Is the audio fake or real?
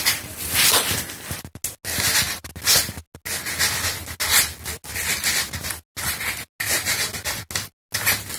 real